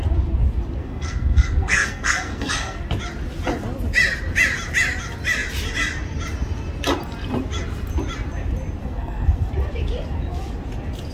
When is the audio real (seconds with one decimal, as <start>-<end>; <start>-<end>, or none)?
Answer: 0.0-0.8; 2.8-8.8; 9.5-11.1